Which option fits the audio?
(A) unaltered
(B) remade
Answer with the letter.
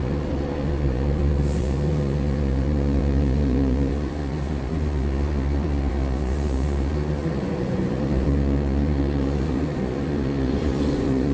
B